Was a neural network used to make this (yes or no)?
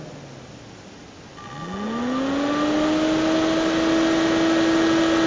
no